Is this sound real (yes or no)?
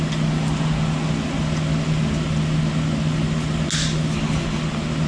yes